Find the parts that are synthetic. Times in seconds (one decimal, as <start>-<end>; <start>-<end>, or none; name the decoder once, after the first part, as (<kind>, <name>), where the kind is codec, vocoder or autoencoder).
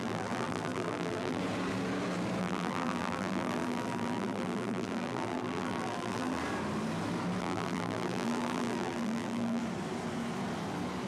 0.0-1.4 (vocoder, BigVGAN v2); 2.4-6.4; 7.4-9.6